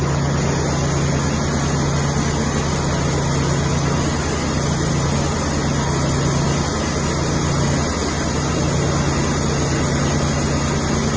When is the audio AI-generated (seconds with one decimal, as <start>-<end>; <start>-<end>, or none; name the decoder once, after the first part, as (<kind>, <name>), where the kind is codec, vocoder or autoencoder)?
none